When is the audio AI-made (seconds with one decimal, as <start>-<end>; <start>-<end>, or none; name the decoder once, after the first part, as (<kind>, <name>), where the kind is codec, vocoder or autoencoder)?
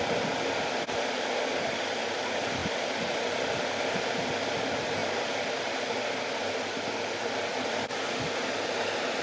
none